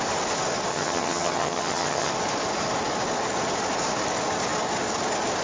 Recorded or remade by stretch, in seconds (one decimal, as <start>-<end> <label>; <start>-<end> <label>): 0.0-0.7 recorded; 0.7-2.1 remade; 2.1-5.4 recorded